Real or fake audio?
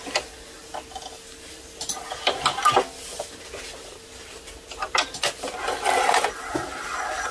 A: real